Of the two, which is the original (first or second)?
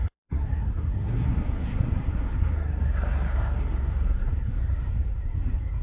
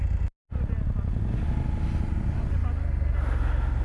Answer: second